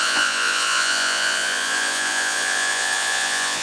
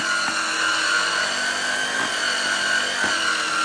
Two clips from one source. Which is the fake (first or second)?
first